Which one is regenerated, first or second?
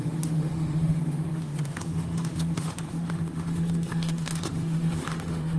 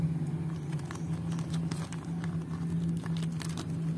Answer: first